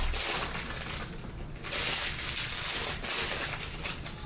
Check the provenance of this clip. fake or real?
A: real